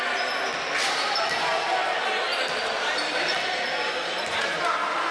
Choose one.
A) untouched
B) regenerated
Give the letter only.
A